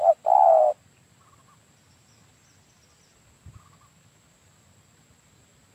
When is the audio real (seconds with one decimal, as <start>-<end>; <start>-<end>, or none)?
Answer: 0.0-5.7